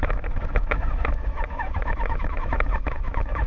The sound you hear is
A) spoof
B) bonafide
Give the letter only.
A